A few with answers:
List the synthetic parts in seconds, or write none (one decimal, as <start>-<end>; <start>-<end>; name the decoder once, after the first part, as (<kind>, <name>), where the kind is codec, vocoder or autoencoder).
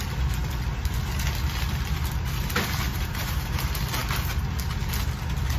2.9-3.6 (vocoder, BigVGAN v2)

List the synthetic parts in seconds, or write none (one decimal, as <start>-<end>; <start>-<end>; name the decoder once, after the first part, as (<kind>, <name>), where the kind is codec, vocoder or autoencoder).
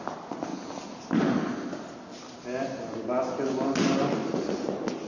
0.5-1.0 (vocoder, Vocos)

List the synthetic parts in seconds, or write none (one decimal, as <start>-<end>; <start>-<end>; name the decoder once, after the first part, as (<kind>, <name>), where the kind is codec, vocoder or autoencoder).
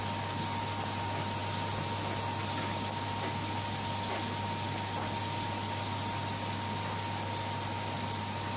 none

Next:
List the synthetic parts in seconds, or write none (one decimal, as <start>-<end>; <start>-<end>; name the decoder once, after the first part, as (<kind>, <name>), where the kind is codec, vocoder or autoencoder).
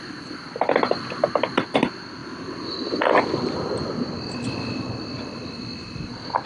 none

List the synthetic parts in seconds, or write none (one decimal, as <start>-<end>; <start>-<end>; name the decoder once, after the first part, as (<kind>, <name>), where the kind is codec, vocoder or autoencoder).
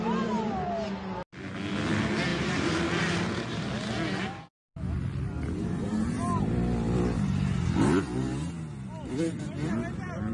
2.3-3.4 (vocoder, BigVGAN v2)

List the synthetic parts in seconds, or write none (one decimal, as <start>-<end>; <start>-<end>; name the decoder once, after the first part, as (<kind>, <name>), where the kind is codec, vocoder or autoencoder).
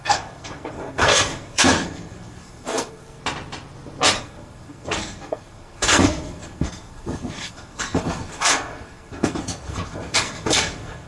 0.0-3.2 (codec, SNAC); 4.2-11.1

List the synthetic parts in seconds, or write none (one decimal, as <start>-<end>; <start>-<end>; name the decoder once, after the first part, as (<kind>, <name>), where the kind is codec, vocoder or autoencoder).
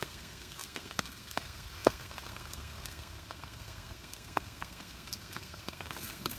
0.0-6.4 (codec, SNAC)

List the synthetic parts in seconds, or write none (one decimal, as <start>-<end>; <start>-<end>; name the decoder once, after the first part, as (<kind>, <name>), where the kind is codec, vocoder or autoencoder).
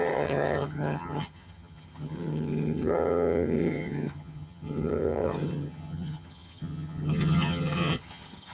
0.0-8.5 (vocoder, HiFi-GAN)